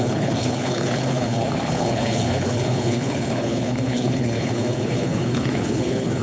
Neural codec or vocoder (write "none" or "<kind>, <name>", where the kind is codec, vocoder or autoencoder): codec, HILCodec